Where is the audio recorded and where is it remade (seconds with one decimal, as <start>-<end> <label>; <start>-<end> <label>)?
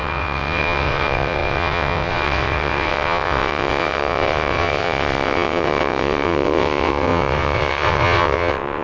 0.0-8.8 remade